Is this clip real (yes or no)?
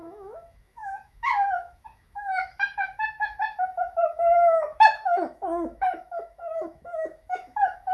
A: no